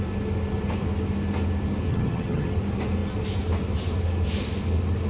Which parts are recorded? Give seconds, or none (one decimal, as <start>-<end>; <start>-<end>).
0.0-1.9; 2.5-5.1